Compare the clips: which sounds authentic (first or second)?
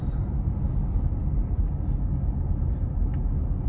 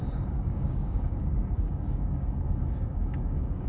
first